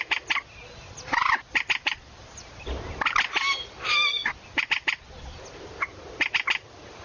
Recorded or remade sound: recorded